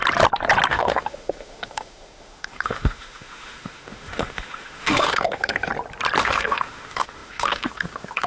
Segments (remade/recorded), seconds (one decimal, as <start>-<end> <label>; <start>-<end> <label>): 0.0-0.7 recorded; 0.7-5.7 remade; 5.7-6.2 recorded; 6.2-8.3 remade